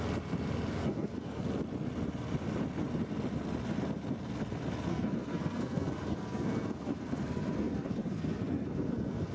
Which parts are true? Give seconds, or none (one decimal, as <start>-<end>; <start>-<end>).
0.0-0.8; 1.4-4.9